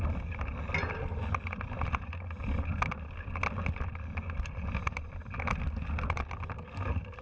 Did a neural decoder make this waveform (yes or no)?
no